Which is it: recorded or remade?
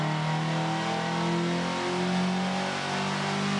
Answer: recorded